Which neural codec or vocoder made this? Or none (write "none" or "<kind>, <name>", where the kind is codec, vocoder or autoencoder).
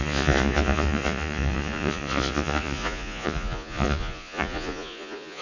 vocoder, Vocos